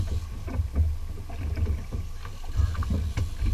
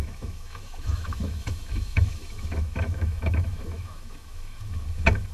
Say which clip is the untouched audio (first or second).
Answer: first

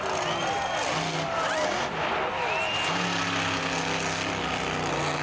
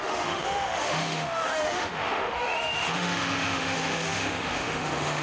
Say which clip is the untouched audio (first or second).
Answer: first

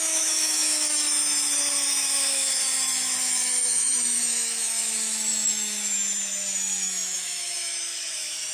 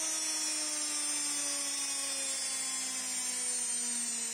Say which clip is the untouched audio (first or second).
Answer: second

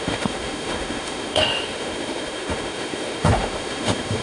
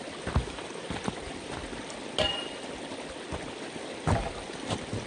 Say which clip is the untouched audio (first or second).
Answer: second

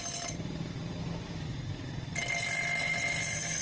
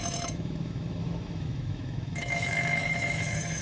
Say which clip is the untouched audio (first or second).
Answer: first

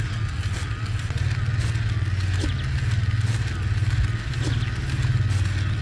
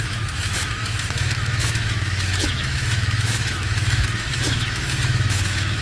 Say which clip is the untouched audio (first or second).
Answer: first